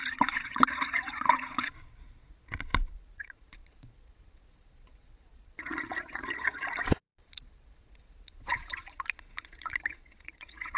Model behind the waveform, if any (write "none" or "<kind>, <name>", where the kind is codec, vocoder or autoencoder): vocoder, Vocos